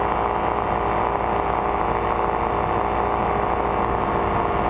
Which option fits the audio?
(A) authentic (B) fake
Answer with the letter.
A